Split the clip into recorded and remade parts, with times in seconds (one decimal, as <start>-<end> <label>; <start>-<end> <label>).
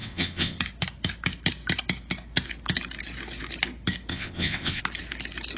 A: 0.0-0.6 remade; 0.6-4.1 recorded; 4.1-4.8 remade; 4.8-5.6 recorded